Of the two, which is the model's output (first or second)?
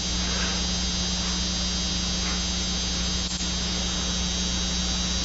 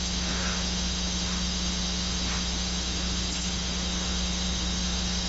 second